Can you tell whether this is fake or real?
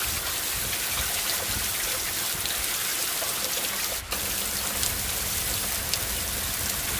real